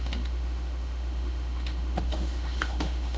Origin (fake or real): fake